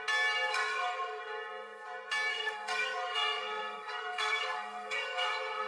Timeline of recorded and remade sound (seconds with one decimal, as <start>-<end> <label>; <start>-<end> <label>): 0.0-0.5 recorded; 0.5-1.2 remade; 1.2-2.3 recorded; 2.3-5.7 remade